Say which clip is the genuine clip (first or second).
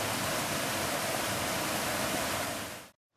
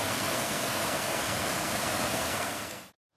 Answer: first